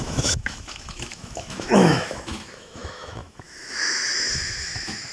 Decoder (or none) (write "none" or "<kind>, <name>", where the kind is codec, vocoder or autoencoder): autoencoder, DAC-VAE